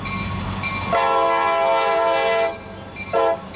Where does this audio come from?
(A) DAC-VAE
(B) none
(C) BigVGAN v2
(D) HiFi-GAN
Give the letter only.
B